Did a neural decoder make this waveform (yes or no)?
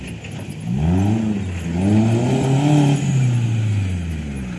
no